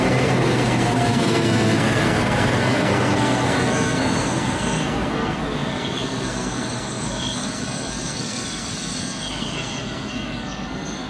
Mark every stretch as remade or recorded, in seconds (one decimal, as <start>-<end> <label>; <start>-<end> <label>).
0.0-11.1 remade